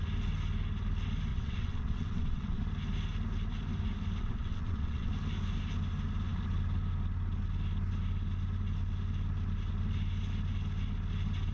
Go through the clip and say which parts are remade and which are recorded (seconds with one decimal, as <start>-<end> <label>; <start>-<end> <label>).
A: 0.0-1.3 recorded; 1.3-2.6 remade; 2.6-4.2 recorded; 4.2-5.1 remade; 5.1-11.5 recorded